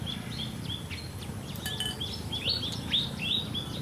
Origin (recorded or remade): recorded